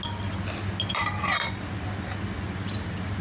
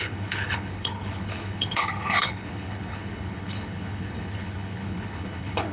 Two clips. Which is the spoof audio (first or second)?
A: second